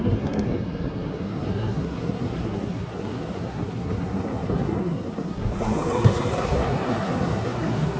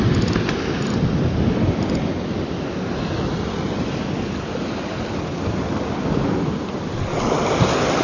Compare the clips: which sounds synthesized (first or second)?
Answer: first